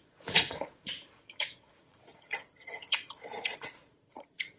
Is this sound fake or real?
fake